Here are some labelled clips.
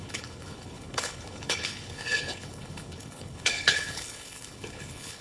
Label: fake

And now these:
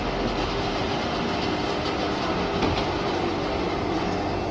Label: real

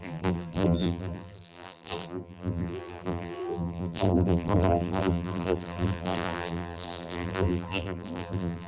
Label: fake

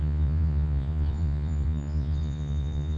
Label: fake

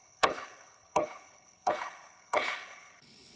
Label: fake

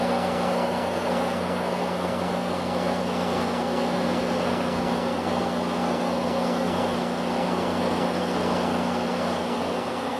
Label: fake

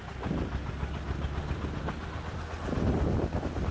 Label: real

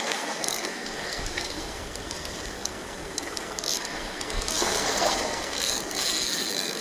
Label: fake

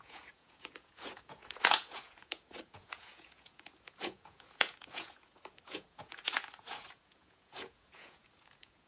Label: fake